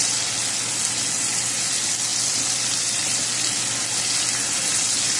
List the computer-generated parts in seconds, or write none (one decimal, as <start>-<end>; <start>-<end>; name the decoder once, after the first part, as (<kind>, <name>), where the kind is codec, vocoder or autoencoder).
none